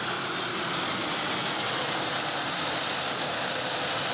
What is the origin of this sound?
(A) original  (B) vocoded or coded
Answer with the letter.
A